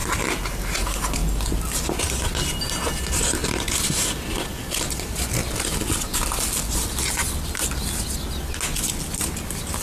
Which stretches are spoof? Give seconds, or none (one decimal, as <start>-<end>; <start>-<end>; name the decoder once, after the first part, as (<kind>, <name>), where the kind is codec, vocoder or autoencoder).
none